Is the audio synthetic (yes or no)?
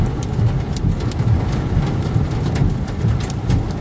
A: no